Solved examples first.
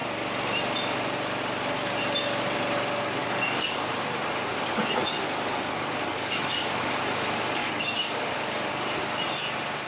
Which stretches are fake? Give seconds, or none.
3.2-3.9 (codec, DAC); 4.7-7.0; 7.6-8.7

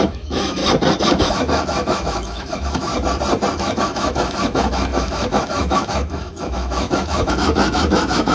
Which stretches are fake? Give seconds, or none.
0.0-0.6 (autoencoder, DAC-VAE); 1.2-2.9; 3.6-8.3

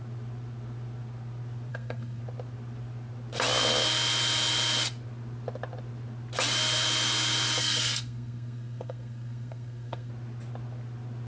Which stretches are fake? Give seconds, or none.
1.7-2.2 (codec, SNAC); 7.6-10.1

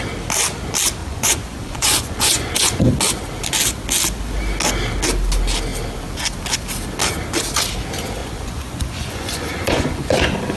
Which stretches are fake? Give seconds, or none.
1.0-2.9 (vocoder, Vocos); 8.2-10.6

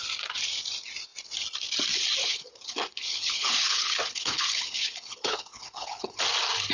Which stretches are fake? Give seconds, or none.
2.2-6.2 (codec, HILCodec)